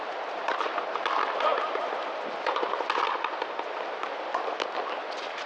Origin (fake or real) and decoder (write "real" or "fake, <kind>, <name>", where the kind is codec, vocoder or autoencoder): real